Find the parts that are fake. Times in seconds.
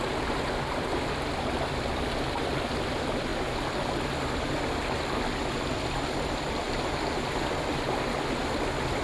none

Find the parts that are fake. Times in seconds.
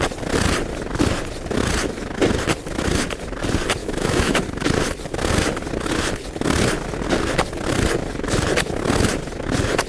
3.8-4.4 (autoencoder, DAC-VAE)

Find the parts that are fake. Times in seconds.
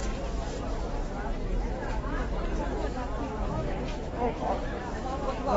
3.4-5.6 (autoencoder, DAC-VAE)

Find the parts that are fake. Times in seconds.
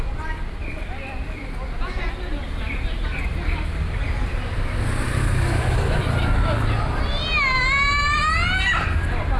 5.2-6.0 (autoencoder, DAC-VAE)